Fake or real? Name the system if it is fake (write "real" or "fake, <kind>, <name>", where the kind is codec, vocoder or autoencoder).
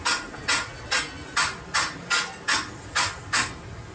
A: real